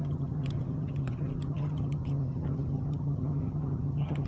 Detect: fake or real fake